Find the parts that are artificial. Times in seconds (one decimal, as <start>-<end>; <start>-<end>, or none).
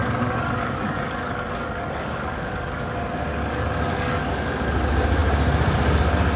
0.0-2.8; 3.3-4.3